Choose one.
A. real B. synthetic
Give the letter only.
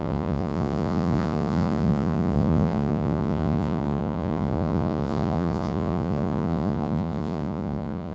B